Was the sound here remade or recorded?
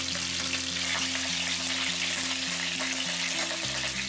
recorded